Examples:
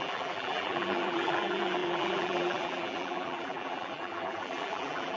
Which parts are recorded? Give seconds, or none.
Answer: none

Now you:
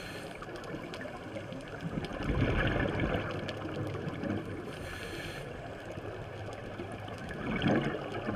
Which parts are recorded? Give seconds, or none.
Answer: 0.0-6.6; 7.4-8.4

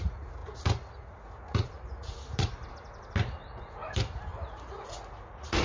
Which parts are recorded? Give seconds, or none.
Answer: 3.8-4.5